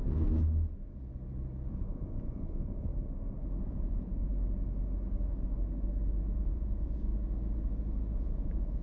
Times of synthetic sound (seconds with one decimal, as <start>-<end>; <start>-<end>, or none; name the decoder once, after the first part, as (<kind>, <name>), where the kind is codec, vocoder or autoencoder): 1.7-2.9 (vocoder, Vocos); 3.6-4.3; 6.4-7.1; 8.2-8.8